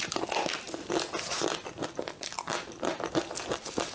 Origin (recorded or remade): recorded